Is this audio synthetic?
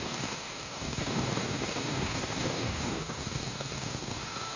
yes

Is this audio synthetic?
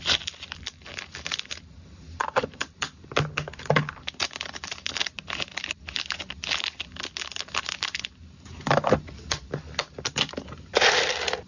no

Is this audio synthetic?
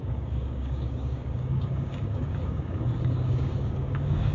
yes